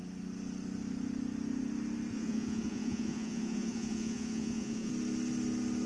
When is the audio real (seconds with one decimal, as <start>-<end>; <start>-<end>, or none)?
0.0-2.1; 4.9-5.9